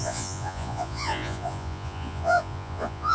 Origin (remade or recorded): remade